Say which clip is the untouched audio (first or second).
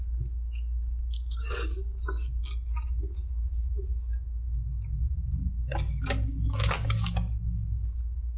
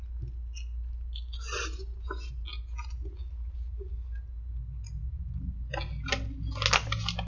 second